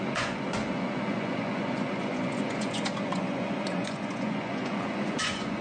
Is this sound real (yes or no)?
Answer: no